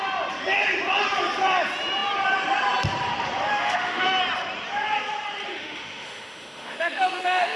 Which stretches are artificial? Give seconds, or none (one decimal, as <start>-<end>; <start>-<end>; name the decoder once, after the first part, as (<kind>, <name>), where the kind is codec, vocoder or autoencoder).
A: 3.5-4.2 (autoencoder, DAC-VAE); 5.5-7.6